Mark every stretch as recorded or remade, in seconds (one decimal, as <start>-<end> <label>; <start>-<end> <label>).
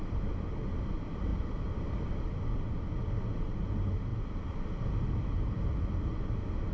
0.0-4.1 recorded; 4.1-5.7 remade; 5.7-6.7 recorded